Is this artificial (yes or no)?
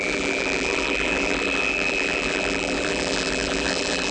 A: yes